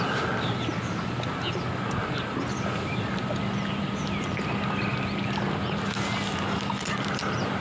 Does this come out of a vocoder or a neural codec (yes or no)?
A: no